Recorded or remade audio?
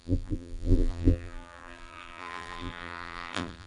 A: remade